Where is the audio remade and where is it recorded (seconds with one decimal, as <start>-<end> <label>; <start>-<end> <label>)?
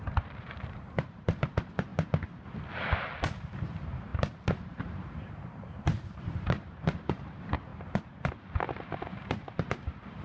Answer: 0.0-1.9 remade; 1.9-3.4 recorded; 3.4-10.2 remade